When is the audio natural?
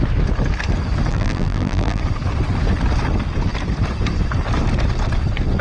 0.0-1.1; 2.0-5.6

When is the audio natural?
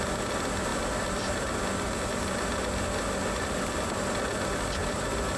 0.0-4.8